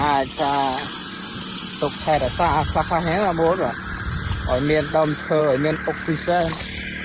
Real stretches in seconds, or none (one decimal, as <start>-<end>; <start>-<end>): 0.0-4.5; 5.4-7.0